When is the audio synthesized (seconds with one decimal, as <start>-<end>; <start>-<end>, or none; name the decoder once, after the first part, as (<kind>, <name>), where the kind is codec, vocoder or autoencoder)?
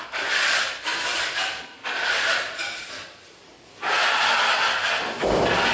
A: 0.0-3.5 (vocoder, BigVGAN v2); 4.5-5.7